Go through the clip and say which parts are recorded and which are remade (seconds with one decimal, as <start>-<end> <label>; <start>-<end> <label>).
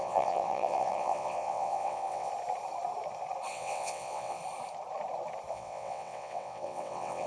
0.0-2.3 remade; 2.3-3.5 recorded; 3.5-4.4 remade; 4.4-5.5 recorded; 5.5-7.3 remade